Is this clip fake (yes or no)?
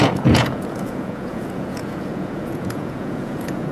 yes